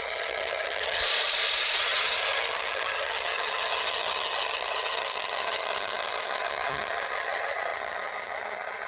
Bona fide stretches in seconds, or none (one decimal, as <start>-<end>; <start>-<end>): 1.0-1.8